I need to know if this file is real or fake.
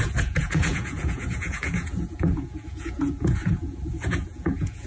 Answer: fake